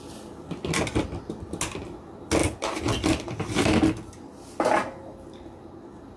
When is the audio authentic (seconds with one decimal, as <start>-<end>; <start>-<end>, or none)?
0.0-2.4; 3.4-6.2